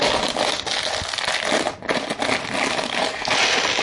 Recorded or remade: recorded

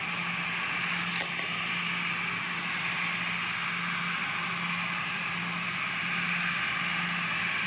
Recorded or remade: recorded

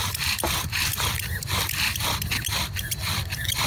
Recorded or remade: remade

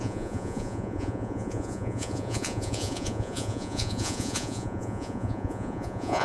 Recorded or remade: remade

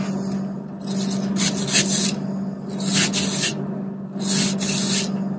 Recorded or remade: recorded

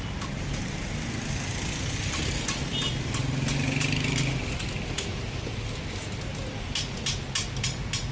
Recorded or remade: recorded